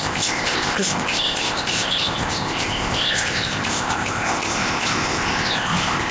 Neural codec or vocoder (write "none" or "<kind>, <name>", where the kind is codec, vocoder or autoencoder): codec, ZipCodec